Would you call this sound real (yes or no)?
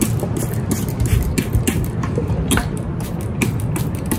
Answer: yes